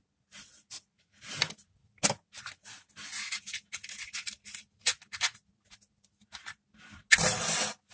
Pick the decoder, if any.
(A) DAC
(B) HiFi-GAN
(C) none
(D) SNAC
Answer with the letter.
C